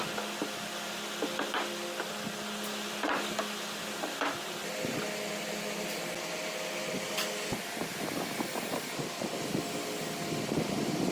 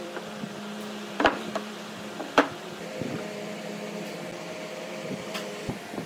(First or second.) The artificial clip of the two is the second